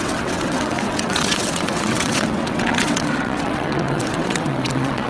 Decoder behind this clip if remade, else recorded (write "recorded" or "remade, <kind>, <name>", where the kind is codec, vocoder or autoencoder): remade, vocoder, WaveNeXt